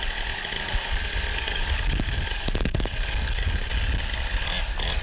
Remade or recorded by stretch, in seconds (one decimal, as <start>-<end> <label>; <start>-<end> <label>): 0.0-1.3 recorded; 1.3-3.7 remade; 3.7-5.0 recorded

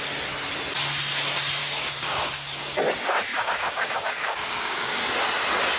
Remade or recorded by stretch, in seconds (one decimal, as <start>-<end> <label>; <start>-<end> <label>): 0.0-1.6 recorded; 1.6-2.3 remade; 2.3-3.3 recorded; 3.3-5.0 remade; 5.0-5.8 recorded

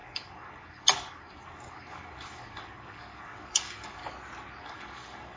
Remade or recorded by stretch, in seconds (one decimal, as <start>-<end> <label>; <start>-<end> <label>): 0.0-4.0 remade; 4.0-4.6 recorded; 4.6-5.4 remade